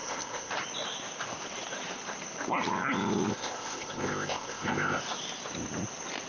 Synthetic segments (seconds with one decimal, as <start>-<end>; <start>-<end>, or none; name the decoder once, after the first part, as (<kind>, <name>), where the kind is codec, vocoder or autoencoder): 0.0-0.5 (codec, ZipCodec); 3.3-5.0